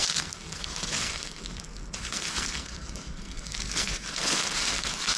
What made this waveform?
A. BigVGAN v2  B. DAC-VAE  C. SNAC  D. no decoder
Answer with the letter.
C